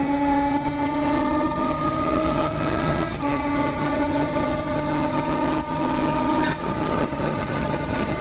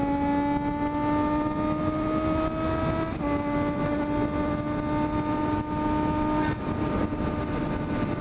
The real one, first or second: second